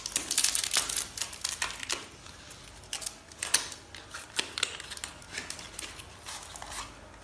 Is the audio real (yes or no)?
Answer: yes